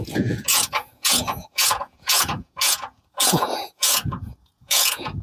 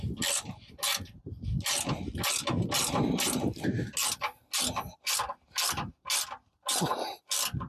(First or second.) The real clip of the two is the second